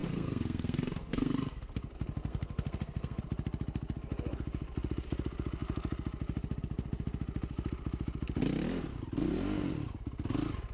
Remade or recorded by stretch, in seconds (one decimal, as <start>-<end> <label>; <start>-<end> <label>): 0.0-1.7 remade; 1.7-2.3 recorded; 2.3-3.2 remade; 3.2-10.7 recorded